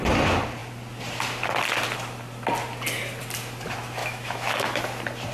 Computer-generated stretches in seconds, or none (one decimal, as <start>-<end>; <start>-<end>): 4.0-4.8